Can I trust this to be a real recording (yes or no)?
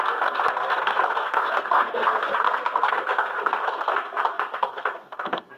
no